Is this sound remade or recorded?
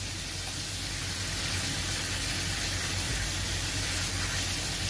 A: recorded